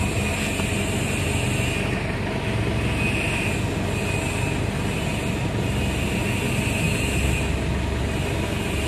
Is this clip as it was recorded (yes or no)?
yes